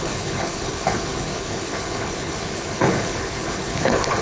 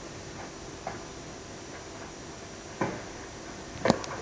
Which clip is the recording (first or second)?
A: second